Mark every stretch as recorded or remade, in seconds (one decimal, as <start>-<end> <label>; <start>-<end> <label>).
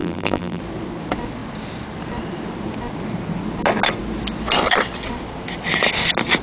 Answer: 0.0-0.6 remade; 0.6-6.4 recorded